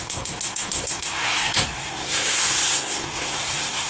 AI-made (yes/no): yes